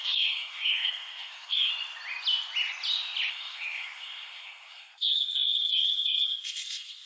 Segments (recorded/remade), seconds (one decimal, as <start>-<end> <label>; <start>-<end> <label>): 0.0-1.7 remade; 1.7-3.3 recorded; 3.3-7.1 remade